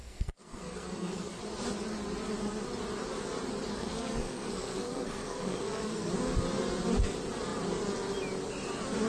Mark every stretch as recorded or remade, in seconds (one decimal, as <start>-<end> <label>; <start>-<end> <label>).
0.0-1.4 remade; 1.4-3.7 recorded; 3.7-6.1 remade; 6.1-9.1 recorded